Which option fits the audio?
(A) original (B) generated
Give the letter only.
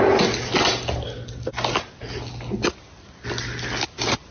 A